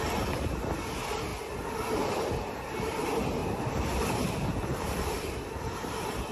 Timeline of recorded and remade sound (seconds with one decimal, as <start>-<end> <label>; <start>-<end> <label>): 0.0-1.3 recorded; 1.3-2.3 remade; 2.3-3.4 recorded; 3.4-6.3 remade